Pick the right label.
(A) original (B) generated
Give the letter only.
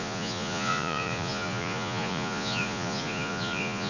B